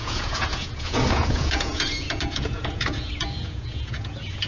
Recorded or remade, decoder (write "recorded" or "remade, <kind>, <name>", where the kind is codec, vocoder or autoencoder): remade, vocoder, Vocos